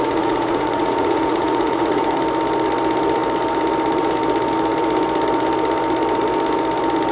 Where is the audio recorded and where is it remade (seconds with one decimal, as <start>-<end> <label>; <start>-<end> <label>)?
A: 0.0-2.2 remade; 2.2-7.1 recorded